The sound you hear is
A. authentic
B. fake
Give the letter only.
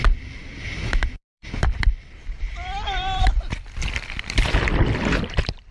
B